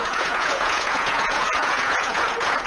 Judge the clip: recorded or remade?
remade